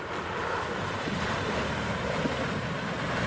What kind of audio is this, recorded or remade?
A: recorded